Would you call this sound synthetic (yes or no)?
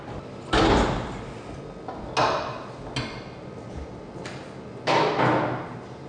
no